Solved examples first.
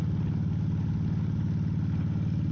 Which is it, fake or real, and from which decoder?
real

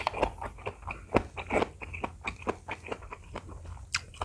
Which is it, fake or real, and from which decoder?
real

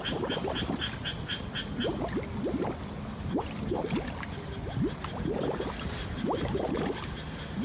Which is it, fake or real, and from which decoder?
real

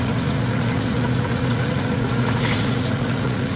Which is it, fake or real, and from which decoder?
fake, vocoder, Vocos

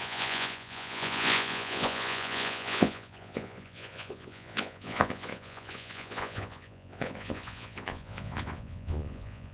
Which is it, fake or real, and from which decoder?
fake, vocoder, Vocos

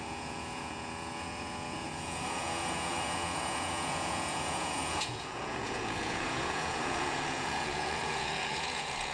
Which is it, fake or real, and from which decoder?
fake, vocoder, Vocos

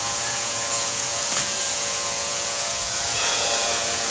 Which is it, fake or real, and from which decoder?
fake, vocoder, Vocos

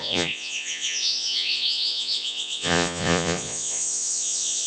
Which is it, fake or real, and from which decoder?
fake, vocoder, Vocos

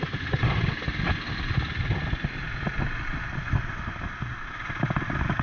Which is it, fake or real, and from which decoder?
real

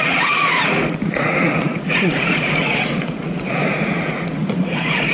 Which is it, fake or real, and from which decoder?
fake, vocoder, Vocos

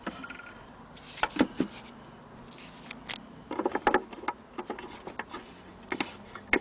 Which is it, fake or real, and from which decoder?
real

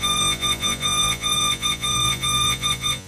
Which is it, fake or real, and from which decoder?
fake, vocoder, Vocos